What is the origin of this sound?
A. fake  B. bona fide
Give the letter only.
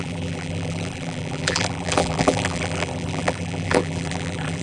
A